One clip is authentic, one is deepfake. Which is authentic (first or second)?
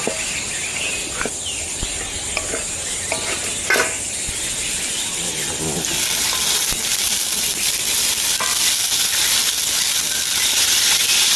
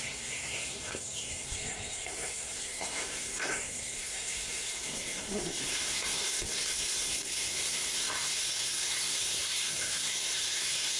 first